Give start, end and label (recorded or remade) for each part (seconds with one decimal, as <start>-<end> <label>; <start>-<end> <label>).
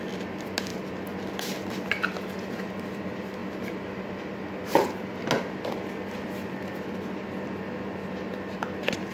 0.0-9.1 recorded